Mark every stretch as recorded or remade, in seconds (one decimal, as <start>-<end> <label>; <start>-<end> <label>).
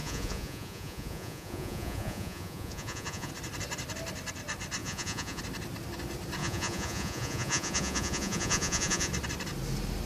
0.0-3.3 remade; 3.3-4.8 recorded; 4.8-5.4 remade; 5.4-6.4 recorded; 6.4-9.1 remade; 9.1-10.1 recorded